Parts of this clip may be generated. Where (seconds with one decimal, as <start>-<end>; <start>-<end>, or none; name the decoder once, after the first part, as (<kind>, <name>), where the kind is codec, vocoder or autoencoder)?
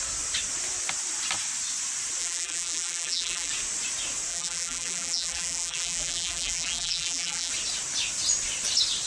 2.2-3.5 (vocoder, BigVGAN v2); 4.3-7.5